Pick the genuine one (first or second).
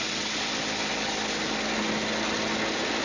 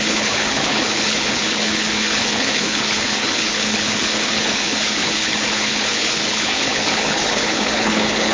first